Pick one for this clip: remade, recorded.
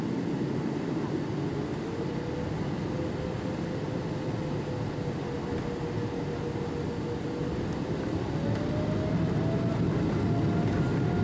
recorded